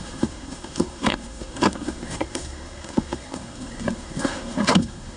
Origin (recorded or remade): remade